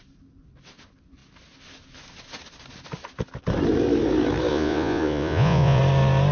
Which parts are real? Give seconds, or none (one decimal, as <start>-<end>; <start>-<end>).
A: 0.0-4.5; 5.8-6.3